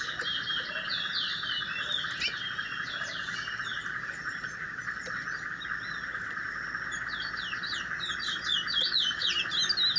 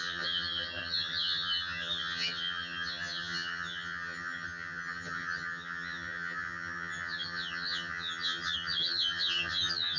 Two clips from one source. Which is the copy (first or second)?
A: second